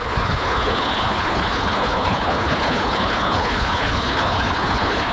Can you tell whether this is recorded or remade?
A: remade